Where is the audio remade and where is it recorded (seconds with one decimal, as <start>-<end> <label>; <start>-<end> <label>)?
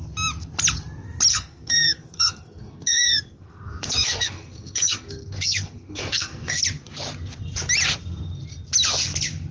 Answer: 0.0-1.3 recorded; 1.3-6.6 remade; 6.6-9.5 recorded